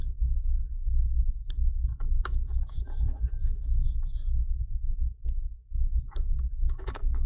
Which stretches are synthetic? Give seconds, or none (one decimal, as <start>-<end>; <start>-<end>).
0.0-7.3